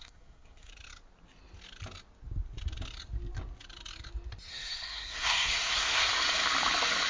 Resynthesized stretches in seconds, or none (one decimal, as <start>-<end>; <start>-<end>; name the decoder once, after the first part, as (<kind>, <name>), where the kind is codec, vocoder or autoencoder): 0.0-0.7 (codec, SNAC); 4.5-6.1